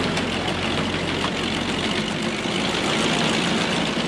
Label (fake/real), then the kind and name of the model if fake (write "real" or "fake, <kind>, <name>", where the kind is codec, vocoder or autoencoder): real